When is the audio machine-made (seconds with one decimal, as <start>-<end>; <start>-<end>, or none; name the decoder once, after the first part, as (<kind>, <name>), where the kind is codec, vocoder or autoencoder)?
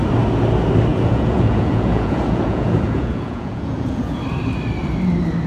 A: 0.9-4.2 (vocoder, Vocos)